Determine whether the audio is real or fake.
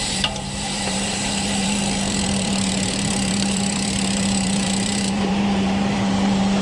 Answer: fake